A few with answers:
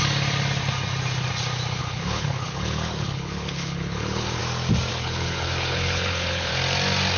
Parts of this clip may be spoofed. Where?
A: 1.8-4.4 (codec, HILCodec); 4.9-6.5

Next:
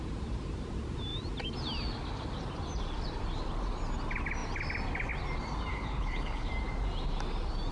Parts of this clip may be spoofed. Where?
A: 5.7-6.5 (codec, HILCodec)

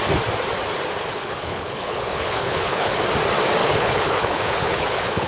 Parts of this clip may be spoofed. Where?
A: 1.1-3.0 (codec, HILCodec); 3.6-5.3

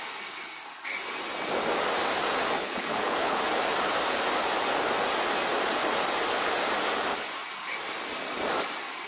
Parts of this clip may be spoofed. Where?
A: 2.6-3.4 (codec, HILCodec)

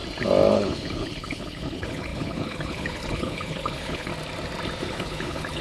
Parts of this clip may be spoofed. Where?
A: 0.5-4.1 (codec, HILCodec); 4.8-5.6

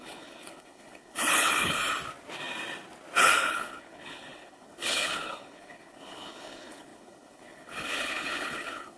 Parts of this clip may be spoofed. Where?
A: 0.0-1.8 (codec, HILCodec); 3.2-9.0

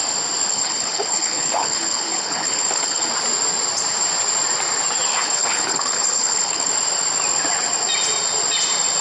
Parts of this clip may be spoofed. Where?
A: 0.5-3.1 (codec, HILCodec); 5.1-6.7